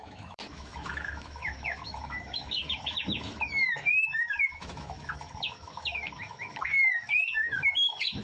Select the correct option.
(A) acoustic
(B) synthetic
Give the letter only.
B